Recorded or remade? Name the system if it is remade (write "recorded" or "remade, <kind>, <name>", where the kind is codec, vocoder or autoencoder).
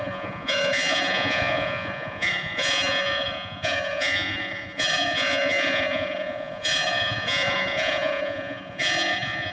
remade, vocoder, Vocos